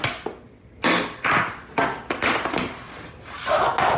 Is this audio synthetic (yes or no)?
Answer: no